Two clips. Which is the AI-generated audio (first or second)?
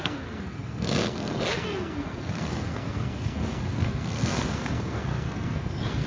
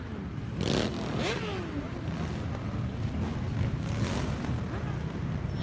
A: first